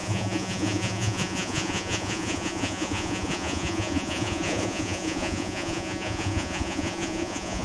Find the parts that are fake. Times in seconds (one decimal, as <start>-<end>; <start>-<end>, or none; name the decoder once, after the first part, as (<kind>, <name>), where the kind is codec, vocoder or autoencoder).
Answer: 0.0-7.6 (vocoder, Vocos)